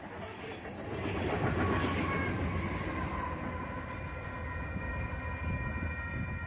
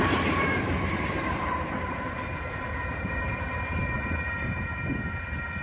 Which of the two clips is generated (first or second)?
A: second